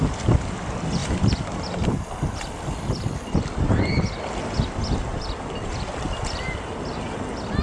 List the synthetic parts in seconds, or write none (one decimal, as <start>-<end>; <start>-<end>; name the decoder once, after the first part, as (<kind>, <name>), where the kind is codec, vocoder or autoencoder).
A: none